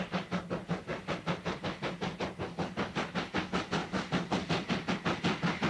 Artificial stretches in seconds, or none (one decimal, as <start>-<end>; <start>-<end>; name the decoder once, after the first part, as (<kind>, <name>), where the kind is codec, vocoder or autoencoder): 0.9-1.6 (vocoder, BigVGAN v2); 3.8-4.9